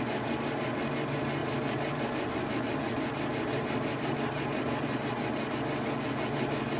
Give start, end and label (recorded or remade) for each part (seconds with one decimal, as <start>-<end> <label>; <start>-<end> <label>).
0.0-1.4 recorded; 1.4-5.5 remade; 5.5-6.8 recorded